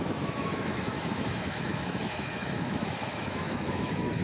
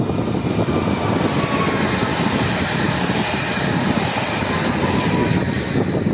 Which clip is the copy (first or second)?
first